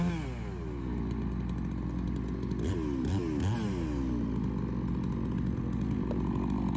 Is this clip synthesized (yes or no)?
no